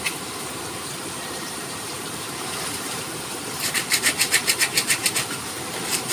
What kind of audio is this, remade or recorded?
remade